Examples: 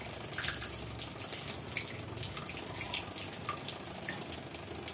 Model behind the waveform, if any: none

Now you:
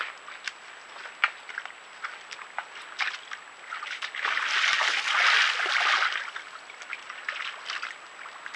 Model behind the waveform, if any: none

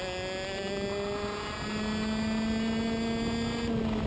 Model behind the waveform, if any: none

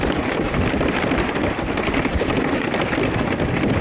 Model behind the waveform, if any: none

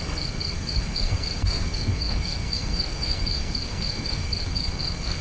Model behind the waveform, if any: codec, SNAC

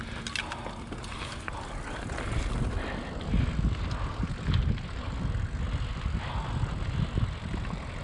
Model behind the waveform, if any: none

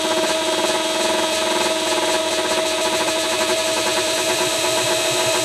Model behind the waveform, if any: none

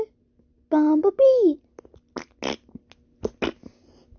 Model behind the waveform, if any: none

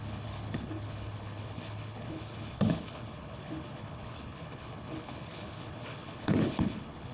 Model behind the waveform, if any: codec, HILCodec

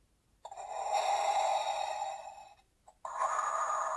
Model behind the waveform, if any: none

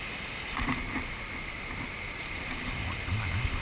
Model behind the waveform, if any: none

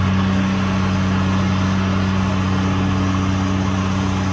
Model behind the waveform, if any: none